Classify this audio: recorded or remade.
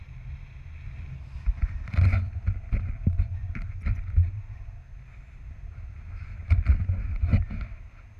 recorded